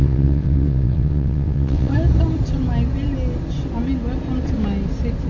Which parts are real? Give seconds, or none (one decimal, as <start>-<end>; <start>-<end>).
1.9-5.3